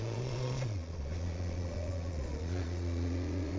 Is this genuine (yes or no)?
no